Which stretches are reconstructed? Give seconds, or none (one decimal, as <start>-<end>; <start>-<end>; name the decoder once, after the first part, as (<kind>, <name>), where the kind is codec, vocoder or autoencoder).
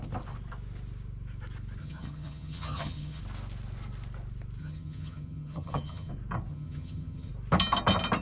1.8-3.2 (vocoder, HiFi-GAN); 4.6-6.1; 6.5-7.3